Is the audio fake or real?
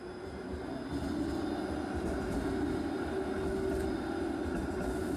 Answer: real